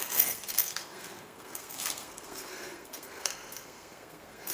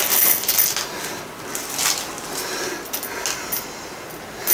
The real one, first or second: second